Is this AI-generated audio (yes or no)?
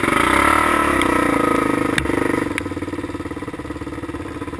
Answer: no